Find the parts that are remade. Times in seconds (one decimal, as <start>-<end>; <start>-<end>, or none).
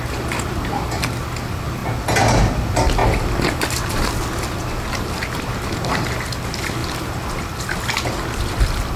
6.8-7.6